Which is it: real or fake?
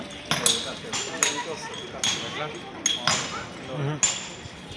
real